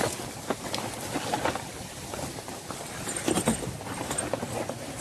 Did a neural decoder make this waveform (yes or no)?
no